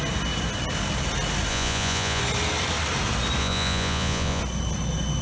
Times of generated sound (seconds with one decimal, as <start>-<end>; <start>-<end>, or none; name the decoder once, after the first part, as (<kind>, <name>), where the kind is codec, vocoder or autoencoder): 1.5-2.2 (vocoder, Vocos); 3.4-4.4